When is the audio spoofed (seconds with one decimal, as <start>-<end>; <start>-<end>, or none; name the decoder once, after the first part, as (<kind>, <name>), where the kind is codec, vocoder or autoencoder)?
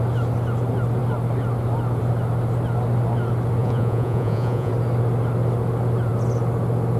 3.6-4.7 (vocoder, Vocos)